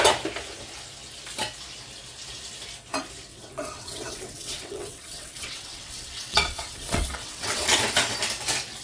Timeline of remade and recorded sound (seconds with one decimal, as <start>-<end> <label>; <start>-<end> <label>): 0.0-3.3 recorded; 3.3-7.8 remade; 7.8-8.8 recorded